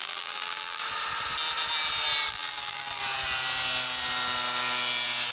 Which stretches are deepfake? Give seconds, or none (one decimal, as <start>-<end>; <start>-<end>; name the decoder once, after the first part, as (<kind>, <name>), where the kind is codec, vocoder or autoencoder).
0.0-0.8 (vocoder, BigVGAN v2); 2.3-3.0